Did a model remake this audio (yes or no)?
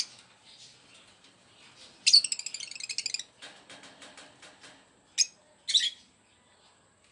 no